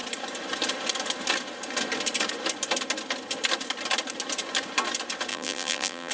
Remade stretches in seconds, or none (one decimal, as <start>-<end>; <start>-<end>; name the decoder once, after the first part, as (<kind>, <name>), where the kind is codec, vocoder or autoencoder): 5.3-6.1 (vocoder, BigVGAN v2)